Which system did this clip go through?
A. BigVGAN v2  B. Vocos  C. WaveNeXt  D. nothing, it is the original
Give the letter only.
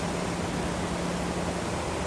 D